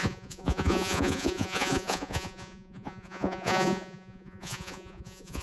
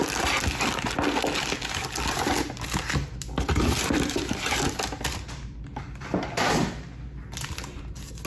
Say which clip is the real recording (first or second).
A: second